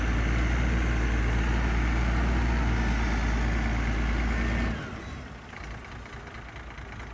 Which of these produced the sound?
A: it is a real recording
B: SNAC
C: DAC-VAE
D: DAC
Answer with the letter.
A